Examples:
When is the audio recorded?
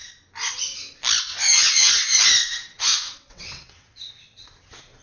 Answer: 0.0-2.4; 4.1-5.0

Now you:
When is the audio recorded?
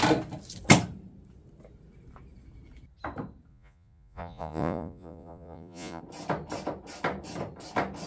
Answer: 0.0-3.5; 6.0-8.1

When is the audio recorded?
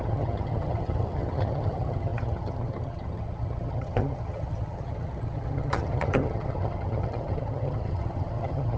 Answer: none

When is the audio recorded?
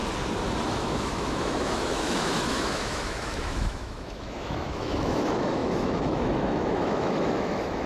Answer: 0.0-0.7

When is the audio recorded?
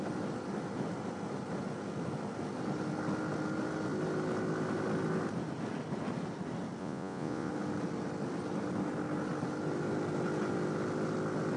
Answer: 0.0-6.8; 7.5-11.6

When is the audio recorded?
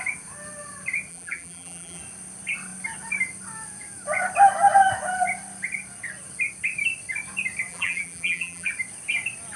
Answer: 0.0-1.1; 2.0-7.7; 8.7-9.6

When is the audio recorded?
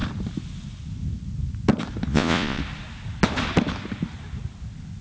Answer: 0.0-2.1; 2.6-5.0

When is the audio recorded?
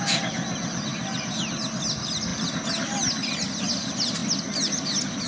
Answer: 0.0-5.3